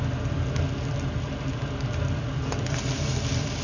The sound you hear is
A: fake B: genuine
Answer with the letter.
B